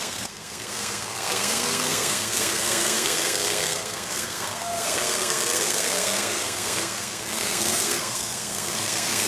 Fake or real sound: fake